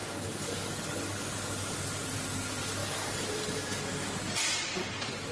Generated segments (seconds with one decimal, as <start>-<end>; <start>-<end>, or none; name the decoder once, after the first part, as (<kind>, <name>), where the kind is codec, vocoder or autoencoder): 0.0-1.8 (codec, DAC); 2.8-4.1